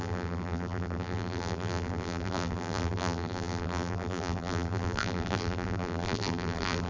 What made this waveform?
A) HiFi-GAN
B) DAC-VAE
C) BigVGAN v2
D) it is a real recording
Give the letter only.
C